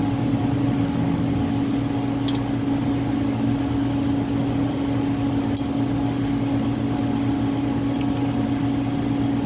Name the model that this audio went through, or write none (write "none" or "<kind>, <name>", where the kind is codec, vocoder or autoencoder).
none